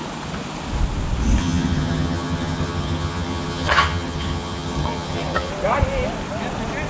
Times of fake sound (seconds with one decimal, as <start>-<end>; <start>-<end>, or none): 1.4-5.5